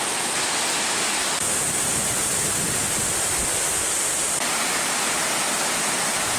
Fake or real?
real